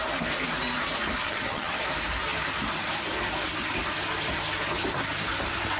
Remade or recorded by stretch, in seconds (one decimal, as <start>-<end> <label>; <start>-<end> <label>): 0.0-1.2 recorded; 1.2-1.7 remade; 1.7-5.8 recorded